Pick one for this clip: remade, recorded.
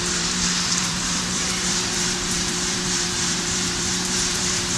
remade